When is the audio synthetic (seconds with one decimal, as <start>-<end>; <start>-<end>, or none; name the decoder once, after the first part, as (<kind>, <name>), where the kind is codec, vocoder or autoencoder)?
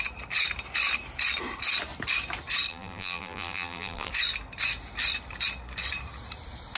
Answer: 2.7-4.1 (vocoder, BigVGAN v2)